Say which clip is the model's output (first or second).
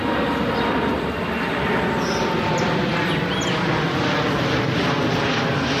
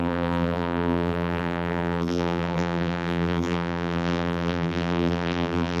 second